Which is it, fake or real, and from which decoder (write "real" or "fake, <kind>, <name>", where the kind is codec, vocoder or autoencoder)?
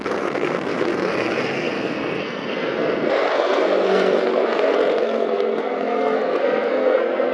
fake, codec, SNAC